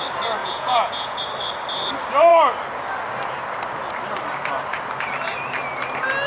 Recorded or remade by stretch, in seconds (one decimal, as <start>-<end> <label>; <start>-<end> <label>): 0.0-0.4 recorded; 0.4-1.2 remade; 1.2-6.3 recorded